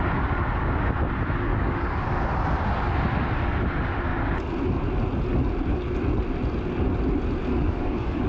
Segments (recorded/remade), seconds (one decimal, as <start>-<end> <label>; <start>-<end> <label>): 0.0-1.5 recorded; 1.5-2.3 remade; 2.3-7.5 recorded; 7.5-8.3 remade